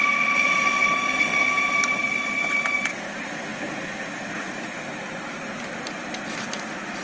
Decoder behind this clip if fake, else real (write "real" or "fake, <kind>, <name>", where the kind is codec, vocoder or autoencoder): real